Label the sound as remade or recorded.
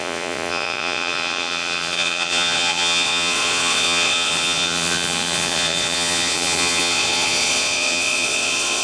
remade